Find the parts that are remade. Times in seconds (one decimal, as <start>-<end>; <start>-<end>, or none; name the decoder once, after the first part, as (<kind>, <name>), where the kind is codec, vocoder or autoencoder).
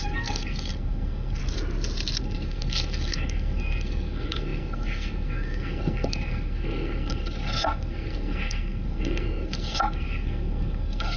0.0-1.4 (codec, SNAC); 2.2-11.2